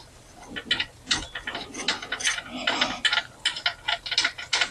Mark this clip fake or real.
real